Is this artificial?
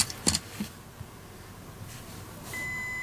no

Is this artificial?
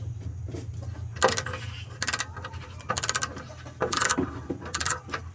no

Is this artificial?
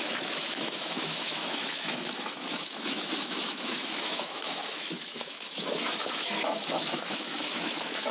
yes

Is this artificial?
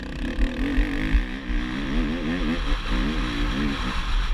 no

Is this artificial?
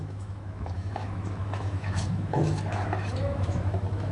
yes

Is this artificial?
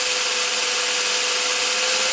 no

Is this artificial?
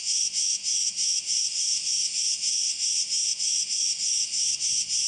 yes